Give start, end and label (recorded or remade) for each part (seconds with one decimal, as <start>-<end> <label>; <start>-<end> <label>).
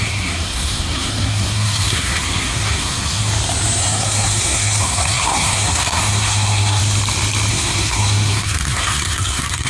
0.0-3.3 remade; 3.3-3.8 recorded; 3.8-6.8 remade; 6.8-7.5 recorded; 7.5-9.7 remade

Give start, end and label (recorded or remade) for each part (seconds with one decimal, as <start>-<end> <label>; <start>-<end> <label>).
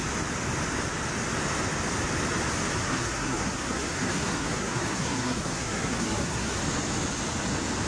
0.0-2.8 recorded; 2.8-6.6 remade; 6.6-7.9 recorded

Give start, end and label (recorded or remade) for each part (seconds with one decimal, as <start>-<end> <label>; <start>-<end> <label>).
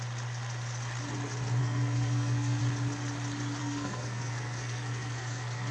0.0-1.6 recorded; 1.6-2.6 remade; 2.6-3.6 recorded; 3.6-5.7 remade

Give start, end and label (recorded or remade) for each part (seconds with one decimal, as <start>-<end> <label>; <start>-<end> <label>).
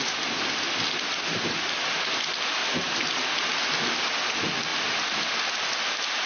0.0-6.3 recorded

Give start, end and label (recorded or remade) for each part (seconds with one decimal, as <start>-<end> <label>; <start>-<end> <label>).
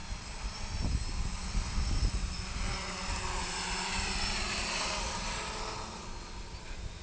0.0-7.0 recorded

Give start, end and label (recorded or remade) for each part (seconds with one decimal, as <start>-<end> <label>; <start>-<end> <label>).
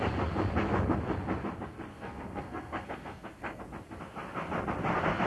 0.0-1.9 recorded; 1.9-3.6 remade; 3.6-5.3 recorded